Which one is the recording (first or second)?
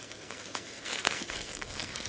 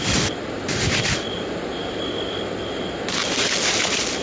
second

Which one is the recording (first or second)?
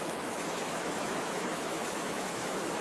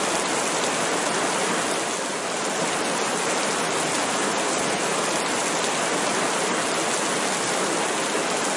second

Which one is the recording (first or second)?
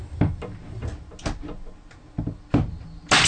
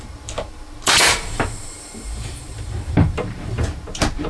first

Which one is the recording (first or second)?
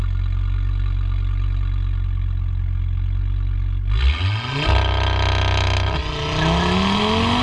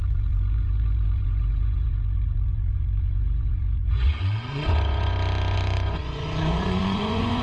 first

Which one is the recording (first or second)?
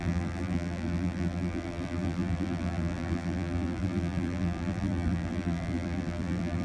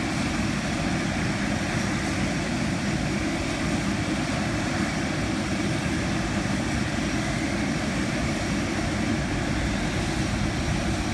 second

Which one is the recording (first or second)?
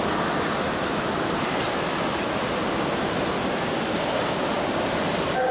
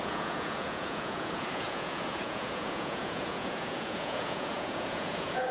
first